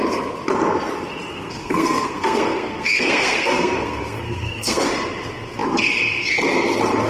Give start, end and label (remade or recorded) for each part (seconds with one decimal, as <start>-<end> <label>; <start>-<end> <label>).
0.0-1.3 recorded; 1.3-4.9 remade; 4.9-7.1 recorded